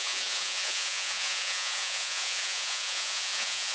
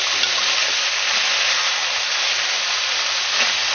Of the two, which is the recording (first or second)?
second